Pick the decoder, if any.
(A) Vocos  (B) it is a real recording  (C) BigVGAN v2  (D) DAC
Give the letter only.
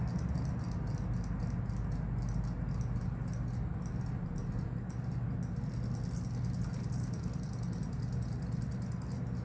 B